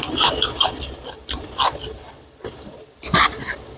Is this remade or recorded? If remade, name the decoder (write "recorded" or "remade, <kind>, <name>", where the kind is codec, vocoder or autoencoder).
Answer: recorded